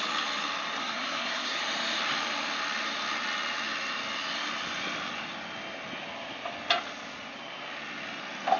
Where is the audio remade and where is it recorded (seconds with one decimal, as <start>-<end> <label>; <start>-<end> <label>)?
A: 0.0-0.8 recorded; 0.8-1.6 remade; 1.6-8.6 recorded